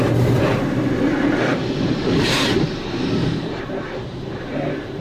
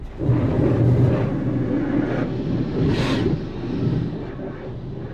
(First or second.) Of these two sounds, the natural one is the second